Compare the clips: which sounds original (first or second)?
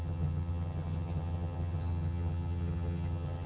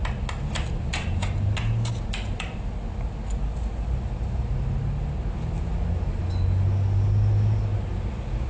second